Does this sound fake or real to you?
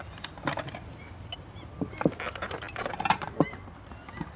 real